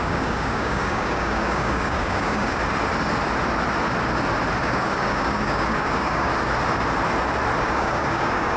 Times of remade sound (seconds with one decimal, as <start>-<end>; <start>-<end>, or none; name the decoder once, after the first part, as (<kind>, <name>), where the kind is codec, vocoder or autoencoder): 0.0-2.6 (codec, DAC); 4.6-6.3; 7.6-8.6